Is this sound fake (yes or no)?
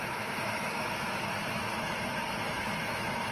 yes